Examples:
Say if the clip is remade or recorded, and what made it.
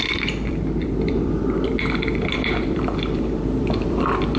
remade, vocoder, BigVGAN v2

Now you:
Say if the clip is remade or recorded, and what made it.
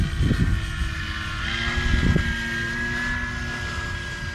recorded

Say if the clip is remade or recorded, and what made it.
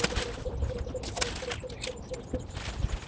recorded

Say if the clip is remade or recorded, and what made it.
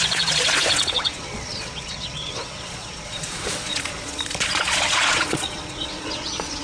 remade, vocoder, Vocos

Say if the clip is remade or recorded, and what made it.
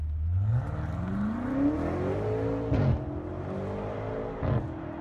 recorded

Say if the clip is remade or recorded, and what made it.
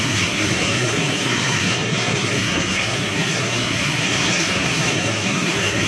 remade, codec, SNAC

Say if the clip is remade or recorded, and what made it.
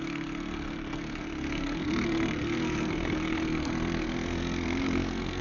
remade, codec, SNAC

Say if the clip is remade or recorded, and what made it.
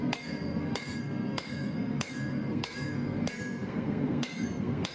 remade, codec, SNAC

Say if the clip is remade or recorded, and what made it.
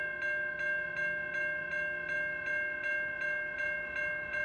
recorded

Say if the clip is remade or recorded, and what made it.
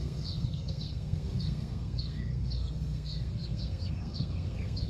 remade, codec, SNAC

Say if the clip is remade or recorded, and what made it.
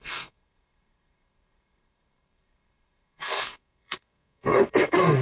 remade, codec, SNAC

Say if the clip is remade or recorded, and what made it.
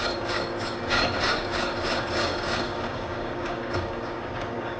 remade, codec, DAC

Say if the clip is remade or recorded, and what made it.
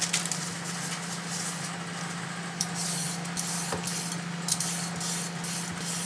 recorded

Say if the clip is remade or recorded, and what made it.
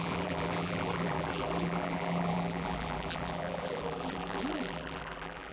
remade, vocoder, BigVGAN v2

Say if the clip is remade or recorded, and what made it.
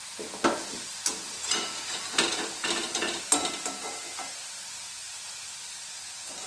recorded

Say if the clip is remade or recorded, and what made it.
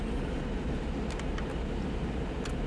recorded